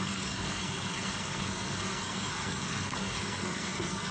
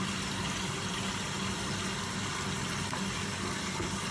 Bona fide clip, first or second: second